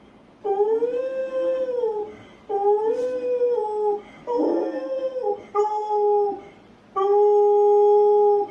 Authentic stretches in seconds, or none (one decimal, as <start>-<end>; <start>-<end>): 0.0-8.5